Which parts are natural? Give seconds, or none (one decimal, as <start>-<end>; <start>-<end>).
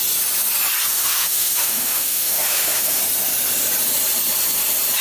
0.0-0.9; 3.0-5.0